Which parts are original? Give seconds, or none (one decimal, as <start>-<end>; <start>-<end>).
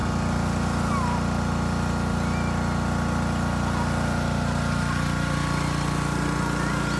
0.0-7.0